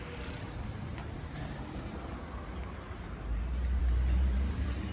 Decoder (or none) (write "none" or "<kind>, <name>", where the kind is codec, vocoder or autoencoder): vocoder, BigVGAN v2